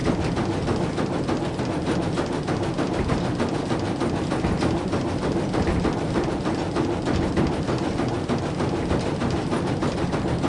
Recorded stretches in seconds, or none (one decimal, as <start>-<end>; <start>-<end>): 0.0-10.5